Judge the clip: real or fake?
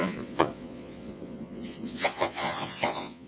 fake